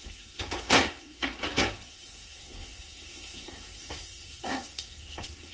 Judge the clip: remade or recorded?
remade